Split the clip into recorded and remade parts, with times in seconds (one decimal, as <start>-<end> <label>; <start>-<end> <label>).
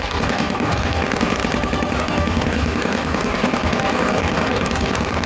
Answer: 0.0-1.4 remade; 1.4-2.0 recorded; 2.0-5.3 remade